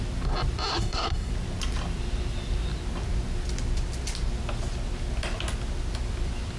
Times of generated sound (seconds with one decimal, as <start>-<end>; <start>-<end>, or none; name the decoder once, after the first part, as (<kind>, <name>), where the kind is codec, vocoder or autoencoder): 0.7-1.3 (codec, SNAC)